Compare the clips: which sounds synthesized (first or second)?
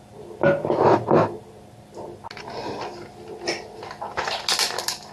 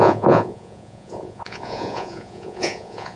second